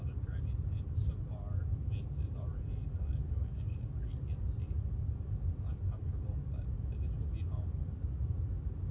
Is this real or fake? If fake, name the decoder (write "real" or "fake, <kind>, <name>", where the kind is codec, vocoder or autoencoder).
real